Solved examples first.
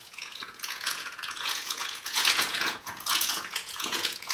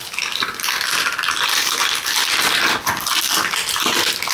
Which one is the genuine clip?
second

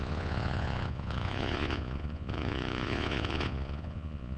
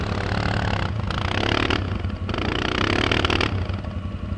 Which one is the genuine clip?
second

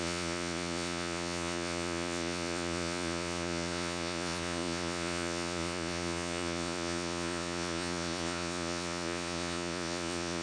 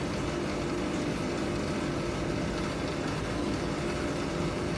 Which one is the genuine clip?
second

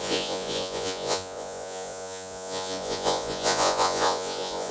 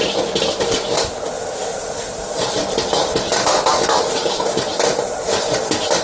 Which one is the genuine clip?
second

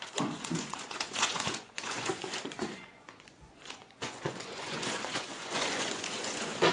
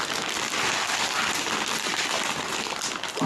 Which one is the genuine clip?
second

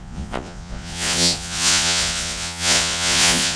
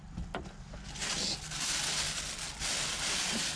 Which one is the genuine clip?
second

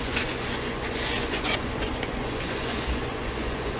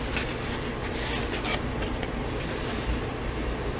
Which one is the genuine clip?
second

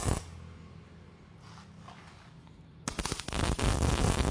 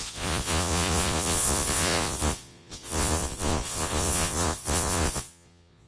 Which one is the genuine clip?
first